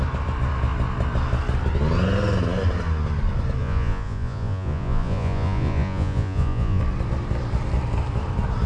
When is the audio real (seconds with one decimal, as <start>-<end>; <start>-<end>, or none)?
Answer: 0.0-3.6; 6.8-8.7